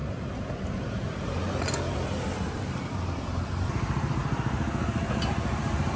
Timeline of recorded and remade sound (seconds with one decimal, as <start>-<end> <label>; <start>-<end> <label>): 0.0-4.2 remade; 4.2-5.6 recorded; 5.6-6.0 remade